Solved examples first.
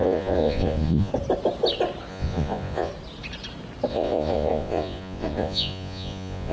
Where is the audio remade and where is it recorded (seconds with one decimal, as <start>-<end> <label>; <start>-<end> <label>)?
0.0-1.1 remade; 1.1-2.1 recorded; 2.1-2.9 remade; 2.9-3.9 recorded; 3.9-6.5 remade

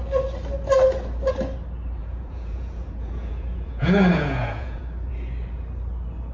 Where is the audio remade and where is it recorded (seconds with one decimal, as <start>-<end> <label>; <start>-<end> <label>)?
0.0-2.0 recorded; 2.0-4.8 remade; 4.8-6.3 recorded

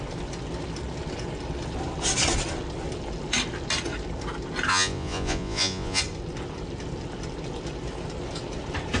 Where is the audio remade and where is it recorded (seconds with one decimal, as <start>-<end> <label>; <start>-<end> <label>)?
0.0-4.7 recorded; 4.7-6.0 remade; 6.0-9.0 recorded

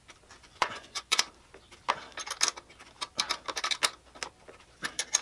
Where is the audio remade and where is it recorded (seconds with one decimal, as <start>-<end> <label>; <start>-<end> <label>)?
0.0-0.4 recorded; 0.4-1.3 remade; 1.3-5.2 recorded

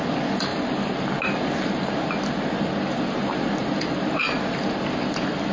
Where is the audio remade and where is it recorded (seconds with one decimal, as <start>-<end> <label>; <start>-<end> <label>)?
0.0-5.5 recorded

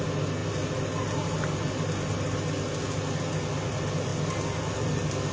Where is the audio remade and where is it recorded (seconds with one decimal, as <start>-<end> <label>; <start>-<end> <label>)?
0.0-5.3 recorded